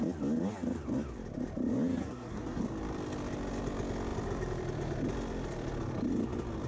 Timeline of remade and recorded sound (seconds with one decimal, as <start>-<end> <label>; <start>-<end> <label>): 0.0-2.0 recorded; 2.0-2.6 remade; 2.6-6.7 recorded